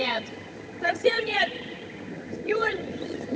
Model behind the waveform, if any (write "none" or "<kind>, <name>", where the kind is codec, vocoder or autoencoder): vocoder, HiFi-GAN